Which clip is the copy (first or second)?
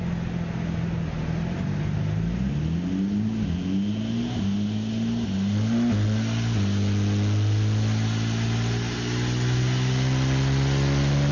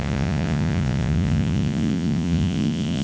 second